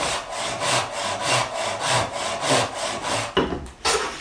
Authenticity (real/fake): real